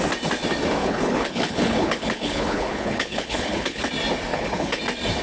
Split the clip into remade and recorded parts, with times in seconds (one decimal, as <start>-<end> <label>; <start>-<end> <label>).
0.0-0.8 recorded; 0.8-3.9 remade; 3.9-4.3 recorded; 4.3-4.8 remade; 4.8-5.2 recorded